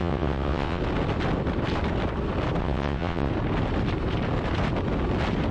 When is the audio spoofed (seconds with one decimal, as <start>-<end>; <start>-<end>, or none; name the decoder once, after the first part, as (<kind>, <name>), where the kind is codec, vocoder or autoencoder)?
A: 0.0-0.8 (vocoder, WaveNeXt); 2.6-3.3